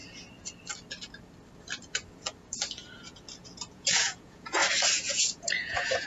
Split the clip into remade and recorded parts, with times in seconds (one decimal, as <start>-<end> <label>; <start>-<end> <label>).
0.0-3.7 recorded; 3.7-4.6 remade; 4.6-5.1 recorded; 5.1-6.1 remade